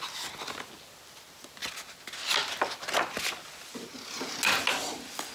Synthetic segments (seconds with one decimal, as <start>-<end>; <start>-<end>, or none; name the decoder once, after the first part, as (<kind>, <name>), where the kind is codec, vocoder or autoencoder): none